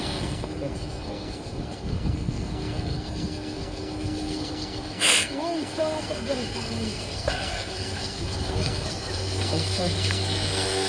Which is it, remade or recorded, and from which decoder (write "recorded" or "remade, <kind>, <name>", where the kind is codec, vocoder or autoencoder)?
remade, codec, SNAC